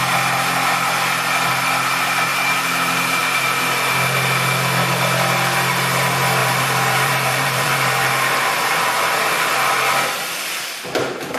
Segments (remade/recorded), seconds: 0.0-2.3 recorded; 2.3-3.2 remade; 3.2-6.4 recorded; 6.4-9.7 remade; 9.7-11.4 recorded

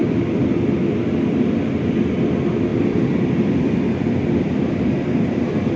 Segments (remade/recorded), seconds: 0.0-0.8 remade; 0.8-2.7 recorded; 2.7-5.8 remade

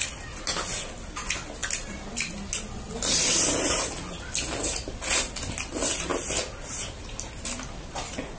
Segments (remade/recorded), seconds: 0.0-8.4 recorded

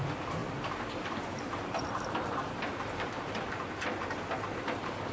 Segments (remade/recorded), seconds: 0.0-0.4 recorded; 0.4-3.5 remade; 3.5-5.1 recorded